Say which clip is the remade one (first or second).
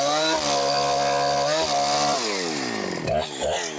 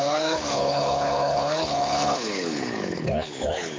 second